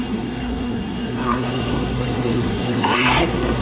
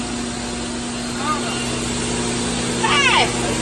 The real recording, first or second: second